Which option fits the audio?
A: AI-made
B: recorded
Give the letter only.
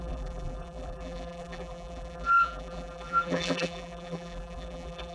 A